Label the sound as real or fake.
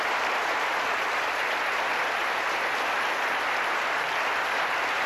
real